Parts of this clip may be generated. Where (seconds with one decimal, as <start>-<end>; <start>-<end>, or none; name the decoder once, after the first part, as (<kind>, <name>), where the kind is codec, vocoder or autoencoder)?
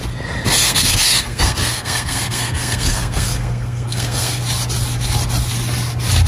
0.6-4.4 (codec, SNAC)